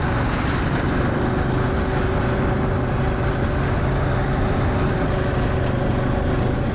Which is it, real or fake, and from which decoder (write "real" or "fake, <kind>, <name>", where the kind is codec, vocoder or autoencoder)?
real